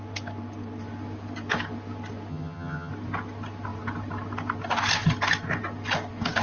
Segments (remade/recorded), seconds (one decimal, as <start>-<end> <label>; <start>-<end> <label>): 0.0-2.3 recorded; 2.3-2.9 remade; 2.9-6.4 recorded